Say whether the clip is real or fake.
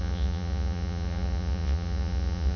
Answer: fake